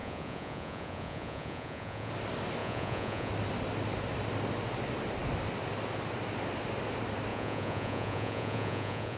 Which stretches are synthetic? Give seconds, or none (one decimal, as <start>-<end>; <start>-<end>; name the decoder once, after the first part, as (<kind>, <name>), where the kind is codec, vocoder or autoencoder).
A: 0.0-2.1 (vocoder, Vocos); 2.6-3.3; 7.3-9.2